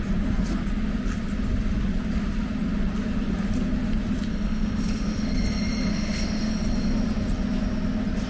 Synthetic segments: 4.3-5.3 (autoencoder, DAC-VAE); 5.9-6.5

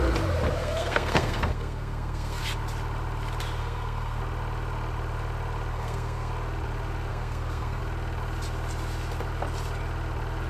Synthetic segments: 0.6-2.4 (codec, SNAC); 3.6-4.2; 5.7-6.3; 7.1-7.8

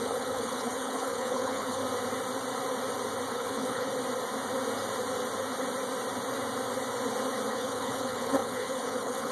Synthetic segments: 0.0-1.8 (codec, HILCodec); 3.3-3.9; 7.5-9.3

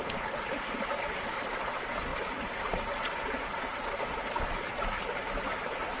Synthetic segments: none

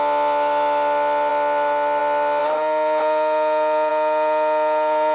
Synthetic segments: none

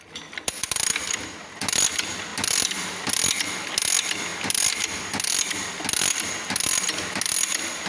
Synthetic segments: none